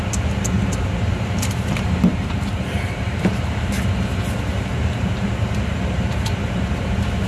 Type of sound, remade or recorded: remade